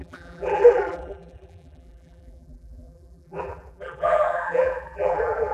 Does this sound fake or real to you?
fake